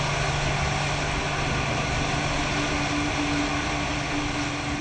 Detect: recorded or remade recorded